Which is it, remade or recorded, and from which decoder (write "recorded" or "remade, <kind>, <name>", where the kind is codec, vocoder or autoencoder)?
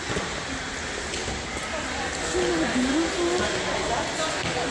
recorded